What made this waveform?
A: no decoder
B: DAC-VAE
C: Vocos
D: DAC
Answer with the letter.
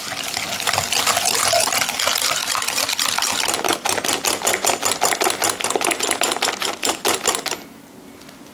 A